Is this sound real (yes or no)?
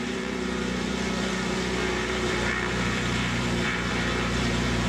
no